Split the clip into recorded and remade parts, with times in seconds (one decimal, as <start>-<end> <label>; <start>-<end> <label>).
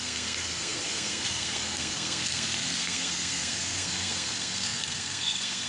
0.0-5.7 remade